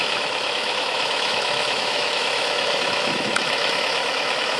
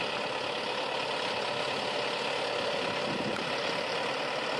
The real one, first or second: second